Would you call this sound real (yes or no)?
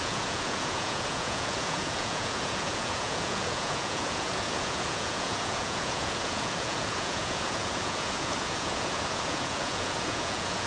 no